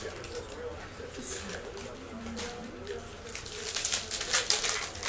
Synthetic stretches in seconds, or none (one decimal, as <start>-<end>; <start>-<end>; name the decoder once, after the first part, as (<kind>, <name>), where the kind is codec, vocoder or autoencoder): none